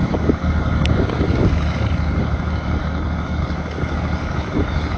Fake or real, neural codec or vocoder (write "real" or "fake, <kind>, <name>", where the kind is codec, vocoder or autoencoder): fake, codec, DAC